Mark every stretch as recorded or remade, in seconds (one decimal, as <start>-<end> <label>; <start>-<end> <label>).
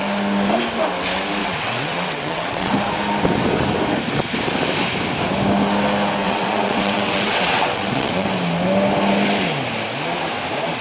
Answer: 0.0-1.4 recorded; 1.4-2.7 remade; 2.7-6.2 recorded; 6.2-8.3 remade; 8.3-10.8 recorded